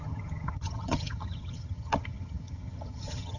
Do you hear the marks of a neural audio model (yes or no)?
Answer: yes